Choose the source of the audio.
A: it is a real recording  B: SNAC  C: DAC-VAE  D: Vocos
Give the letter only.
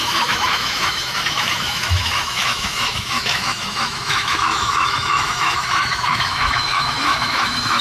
C